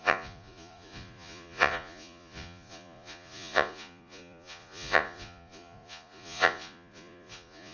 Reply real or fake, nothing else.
fake